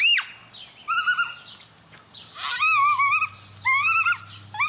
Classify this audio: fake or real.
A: real